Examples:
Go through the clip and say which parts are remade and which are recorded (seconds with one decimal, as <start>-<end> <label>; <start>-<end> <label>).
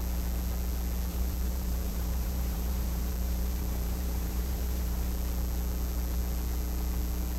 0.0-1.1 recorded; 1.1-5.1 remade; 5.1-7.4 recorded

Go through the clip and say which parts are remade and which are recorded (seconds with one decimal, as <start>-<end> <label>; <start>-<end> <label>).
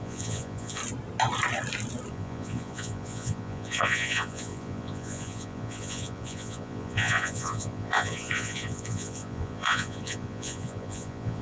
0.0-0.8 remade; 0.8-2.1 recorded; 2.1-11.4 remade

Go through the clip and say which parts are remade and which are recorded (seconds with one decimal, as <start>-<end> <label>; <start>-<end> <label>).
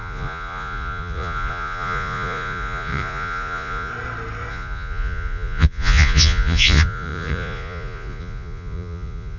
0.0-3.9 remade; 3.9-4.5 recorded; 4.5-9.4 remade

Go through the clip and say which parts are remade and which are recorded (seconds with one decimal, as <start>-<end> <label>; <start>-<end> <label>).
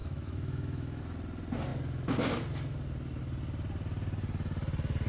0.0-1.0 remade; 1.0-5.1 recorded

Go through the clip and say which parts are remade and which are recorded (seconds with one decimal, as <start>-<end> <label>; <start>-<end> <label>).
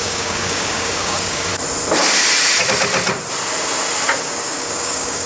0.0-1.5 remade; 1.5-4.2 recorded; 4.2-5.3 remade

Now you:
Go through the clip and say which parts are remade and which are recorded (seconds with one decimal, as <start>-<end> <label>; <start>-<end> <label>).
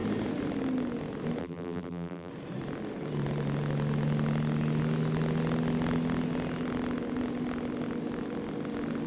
0.0-1.4 recorded; 1.4-2.3 remade; 2.3-9.1 recorded